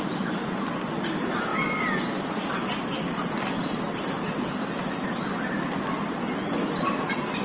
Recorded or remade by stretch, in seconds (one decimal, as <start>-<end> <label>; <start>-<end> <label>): 0.0-7.4 recorded